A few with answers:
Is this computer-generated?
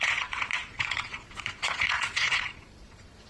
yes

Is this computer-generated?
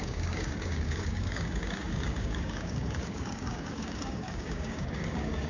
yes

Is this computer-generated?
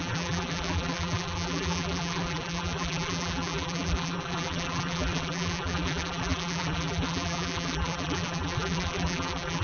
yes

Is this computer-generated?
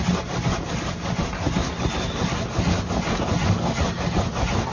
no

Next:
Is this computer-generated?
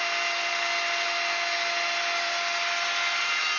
no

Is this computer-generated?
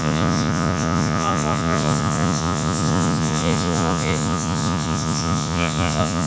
yes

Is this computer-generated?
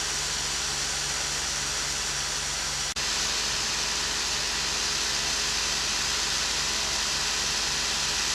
no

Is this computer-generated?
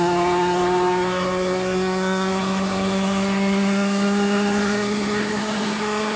yes